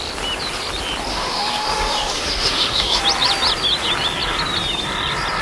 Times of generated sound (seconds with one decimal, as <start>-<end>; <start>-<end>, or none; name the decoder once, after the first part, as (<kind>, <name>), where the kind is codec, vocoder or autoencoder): 1.1-3.0 (autoencoder, DAC-VAE)